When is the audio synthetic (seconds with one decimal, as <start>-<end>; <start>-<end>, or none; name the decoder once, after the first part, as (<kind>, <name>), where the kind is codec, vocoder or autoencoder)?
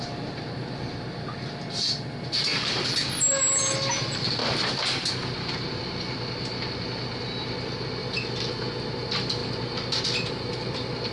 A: none